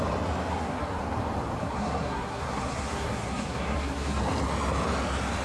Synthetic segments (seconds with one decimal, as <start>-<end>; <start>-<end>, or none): 0.5-1.0; 1.6-4.2